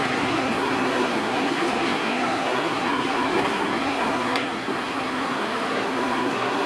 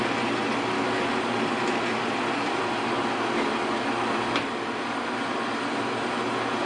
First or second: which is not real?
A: first